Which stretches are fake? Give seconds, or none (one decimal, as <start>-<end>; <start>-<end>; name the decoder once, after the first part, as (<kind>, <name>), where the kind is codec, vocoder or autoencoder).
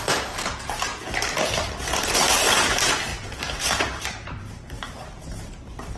0.0-0.9 (vocoder, BigVGAN v2); 2.6-6.0